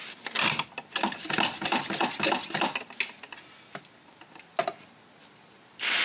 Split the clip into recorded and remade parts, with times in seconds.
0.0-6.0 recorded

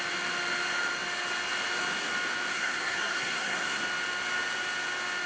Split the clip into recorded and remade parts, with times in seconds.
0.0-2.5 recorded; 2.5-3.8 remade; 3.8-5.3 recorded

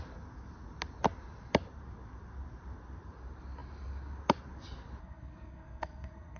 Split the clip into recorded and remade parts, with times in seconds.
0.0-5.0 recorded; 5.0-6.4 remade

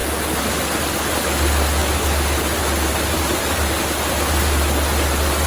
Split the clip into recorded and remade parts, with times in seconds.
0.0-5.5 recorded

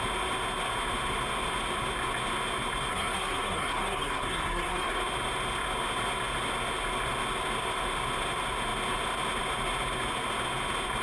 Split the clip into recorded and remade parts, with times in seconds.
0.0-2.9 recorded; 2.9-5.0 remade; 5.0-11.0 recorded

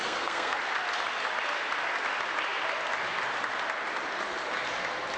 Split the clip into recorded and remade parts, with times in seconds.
0.0-0.6 remade; 0.6-5.2 recorded

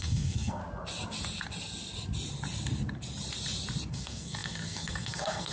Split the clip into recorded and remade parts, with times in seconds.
0.0-0.6 remade; 0.6-3.9 recorded; 3.9-5.5 remade

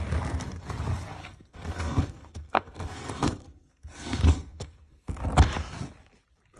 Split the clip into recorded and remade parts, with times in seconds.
0.0-1.2 recorded; 1.2-5.2 remade; 5.2-6.6 recorded